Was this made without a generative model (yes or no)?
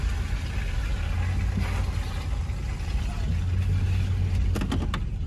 yes